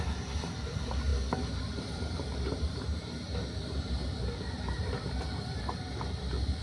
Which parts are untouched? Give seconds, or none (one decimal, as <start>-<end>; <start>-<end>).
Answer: 1.1-1.6